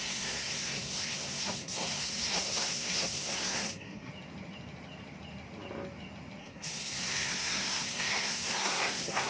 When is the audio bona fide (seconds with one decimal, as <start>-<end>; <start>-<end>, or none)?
4.1-6.4

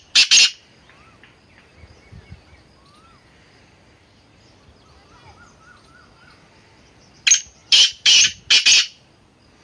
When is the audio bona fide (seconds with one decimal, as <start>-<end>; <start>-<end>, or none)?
0.0-9.6

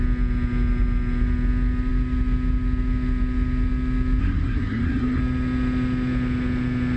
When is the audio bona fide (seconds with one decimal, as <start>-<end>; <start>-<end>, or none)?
0.0-4.2; 5.2-7.0

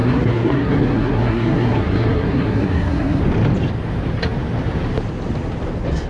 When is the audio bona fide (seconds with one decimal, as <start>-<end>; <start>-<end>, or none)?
3.2-6.1